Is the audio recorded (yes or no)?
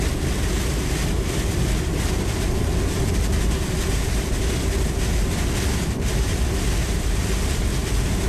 no